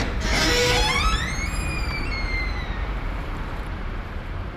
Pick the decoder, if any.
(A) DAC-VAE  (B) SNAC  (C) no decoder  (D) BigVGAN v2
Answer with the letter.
D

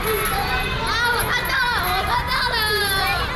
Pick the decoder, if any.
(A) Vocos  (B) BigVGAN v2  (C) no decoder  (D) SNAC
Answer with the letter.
C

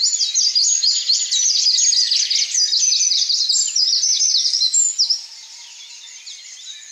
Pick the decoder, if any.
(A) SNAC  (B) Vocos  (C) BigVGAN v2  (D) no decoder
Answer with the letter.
D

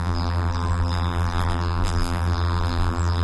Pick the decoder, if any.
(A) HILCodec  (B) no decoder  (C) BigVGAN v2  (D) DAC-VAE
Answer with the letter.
C